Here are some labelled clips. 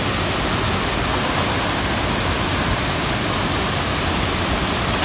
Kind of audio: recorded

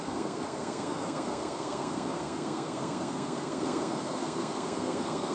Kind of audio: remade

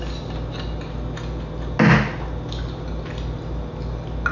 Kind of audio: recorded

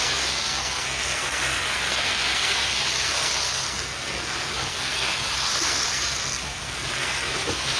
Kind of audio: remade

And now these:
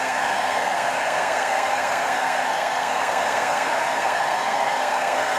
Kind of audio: remade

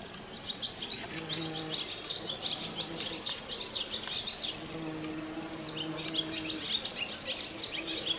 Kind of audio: recorded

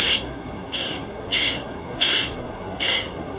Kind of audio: remade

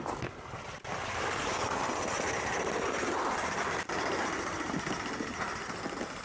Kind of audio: recorded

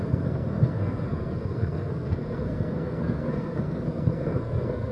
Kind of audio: remade